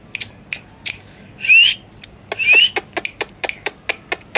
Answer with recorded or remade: recorded